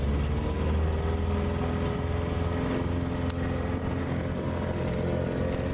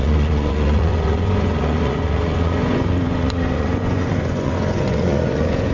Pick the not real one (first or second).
second